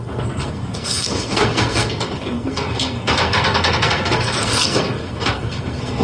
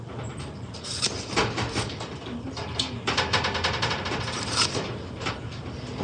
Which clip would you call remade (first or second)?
first